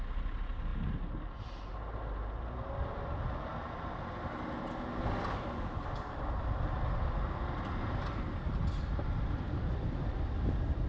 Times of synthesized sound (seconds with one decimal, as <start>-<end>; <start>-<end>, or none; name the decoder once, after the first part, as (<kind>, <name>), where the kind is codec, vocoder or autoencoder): none